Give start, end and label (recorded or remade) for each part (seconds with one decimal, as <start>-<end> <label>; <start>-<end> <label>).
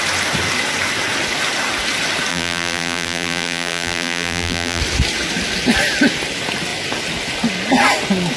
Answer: 0.0-2.3 recorded; 2.3-4.8 remade; 4.8-8.4 recorded